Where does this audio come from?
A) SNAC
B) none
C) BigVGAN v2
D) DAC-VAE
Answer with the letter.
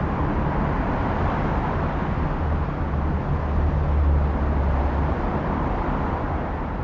B